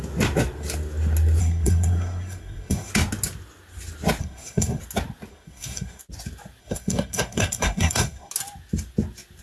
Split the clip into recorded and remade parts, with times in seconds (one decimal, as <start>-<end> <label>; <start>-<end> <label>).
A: 0.0-1.4 recorded; 1.4-2.9 remade; 2.9-4.2 recorded; 4.2-4.8 remade; 4.8-5.3 recorded; 5.3-6.0 remade; 6.0-6.6 recorded; 6.6-8.3 remade; 8.3-9.4 recorded